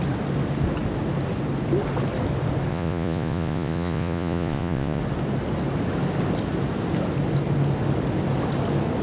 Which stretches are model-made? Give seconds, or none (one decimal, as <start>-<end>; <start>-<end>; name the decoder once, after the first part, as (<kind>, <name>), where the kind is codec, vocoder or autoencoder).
2.7-5.0 (vocoder, Vocos)